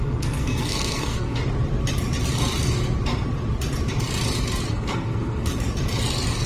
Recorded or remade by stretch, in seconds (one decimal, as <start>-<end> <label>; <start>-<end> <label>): 0.0-1.4 remade; 1.4-4.7 recorded; 4.7-5.5 remade; 5.5-6.5 recorded